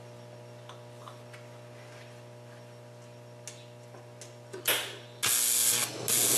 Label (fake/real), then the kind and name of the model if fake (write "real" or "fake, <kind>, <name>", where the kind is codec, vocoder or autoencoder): real